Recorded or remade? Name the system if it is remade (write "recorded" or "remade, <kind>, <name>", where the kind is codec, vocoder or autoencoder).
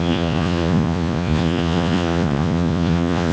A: remade, vocoder, Vocos